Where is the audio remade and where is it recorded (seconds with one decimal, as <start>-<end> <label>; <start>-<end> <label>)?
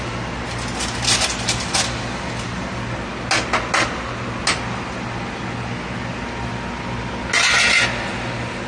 0.0-8.7 recorded